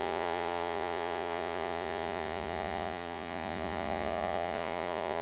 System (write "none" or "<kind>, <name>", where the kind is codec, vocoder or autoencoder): vocoder, Vocos